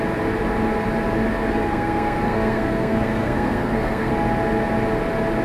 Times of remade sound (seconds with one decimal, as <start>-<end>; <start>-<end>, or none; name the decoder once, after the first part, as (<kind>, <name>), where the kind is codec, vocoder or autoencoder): 1.4-4.1 (codec, SNAC)